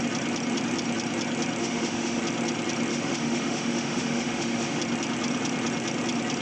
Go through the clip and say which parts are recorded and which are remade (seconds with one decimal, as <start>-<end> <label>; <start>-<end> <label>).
0.0-1.6 recorded; 1.6-2.2 remade; 2.2-2.9 recorded; 2.9-4.8 remade; 4.8-6.4 recorded